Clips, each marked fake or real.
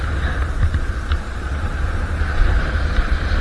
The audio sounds real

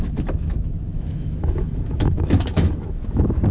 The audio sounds fake